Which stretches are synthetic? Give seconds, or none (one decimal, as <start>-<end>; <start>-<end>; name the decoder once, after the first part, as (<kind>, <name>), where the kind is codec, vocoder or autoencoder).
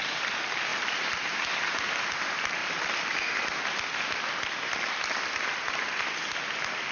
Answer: 0.7-1.4 (vocoder, BigVGAN v2); 2.6-3.3